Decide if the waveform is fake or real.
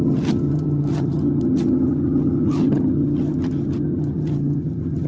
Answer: fake